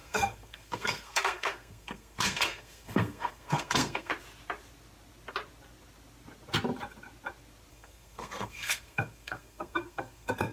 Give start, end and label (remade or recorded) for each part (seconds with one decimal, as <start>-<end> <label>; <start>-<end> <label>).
0.0-4.1 remade; 4.1-7.7 recorded; 7.7-10.5 remade